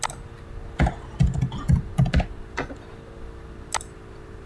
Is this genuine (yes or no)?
yes